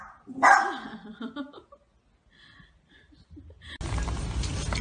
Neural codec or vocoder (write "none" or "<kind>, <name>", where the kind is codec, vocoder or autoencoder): none